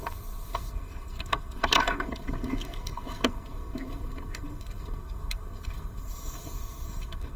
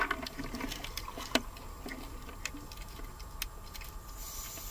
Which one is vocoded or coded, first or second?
first